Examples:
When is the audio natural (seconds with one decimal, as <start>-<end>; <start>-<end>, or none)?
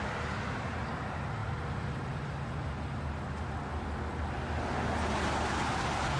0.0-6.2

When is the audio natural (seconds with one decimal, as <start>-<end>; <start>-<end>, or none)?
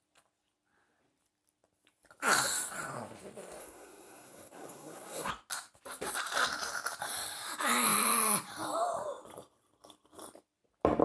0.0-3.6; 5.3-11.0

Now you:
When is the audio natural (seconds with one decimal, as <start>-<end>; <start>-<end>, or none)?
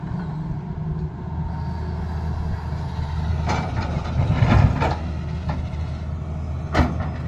0.0-3.3; 4.9-7.3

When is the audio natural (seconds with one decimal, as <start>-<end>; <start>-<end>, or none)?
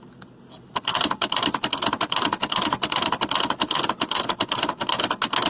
0.0-0.9; 4.2-5.5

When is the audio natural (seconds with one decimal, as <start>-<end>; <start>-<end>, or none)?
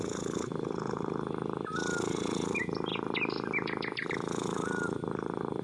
0.0-5.6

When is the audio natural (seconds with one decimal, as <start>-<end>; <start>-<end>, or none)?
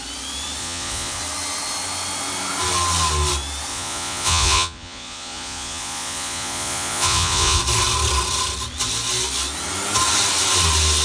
0.0-0.6; 1.2-3.7; 7.6-11.0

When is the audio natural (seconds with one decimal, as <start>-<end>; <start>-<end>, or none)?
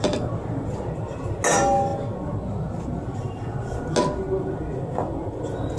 0.0-5.8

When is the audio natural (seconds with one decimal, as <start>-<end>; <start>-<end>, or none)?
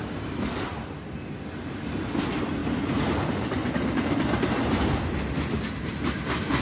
0.0-6.6